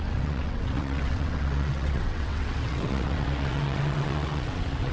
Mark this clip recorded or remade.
remade